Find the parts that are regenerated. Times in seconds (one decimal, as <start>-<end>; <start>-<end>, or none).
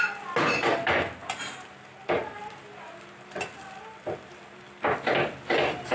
none